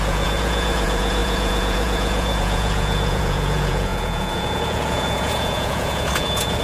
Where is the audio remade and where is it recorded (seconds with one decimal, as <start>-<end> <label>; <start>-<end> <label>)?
0.0-6.6 remade